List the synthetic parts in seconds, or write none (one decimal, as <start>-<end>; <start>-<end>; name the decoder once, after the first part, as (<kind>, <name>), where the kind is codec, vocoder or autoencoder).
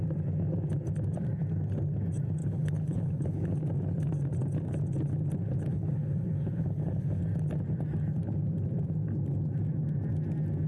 2.4-3.6 (codec, HILCodec); 5.7-7.2